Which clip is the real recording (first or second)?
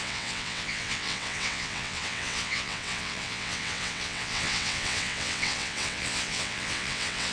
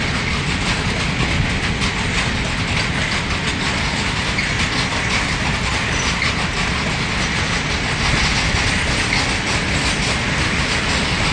second